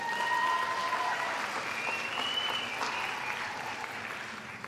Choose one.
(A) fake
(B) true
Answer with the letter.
B